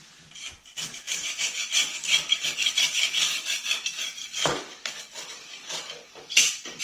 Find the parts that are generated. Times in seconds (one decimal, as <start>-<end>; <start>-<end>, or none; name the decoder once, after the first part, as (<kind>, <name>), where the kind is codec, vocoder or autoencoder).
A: 1.1-3.6 (codec, DAC); 4.2-6.8